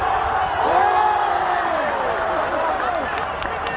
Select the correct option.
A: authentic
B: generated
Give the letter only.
A